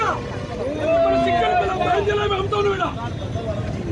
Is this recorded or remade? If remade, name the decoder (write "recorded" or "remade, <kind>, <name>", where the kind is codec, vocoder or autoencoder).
recorded